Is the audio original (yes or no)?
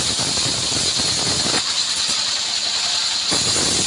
yes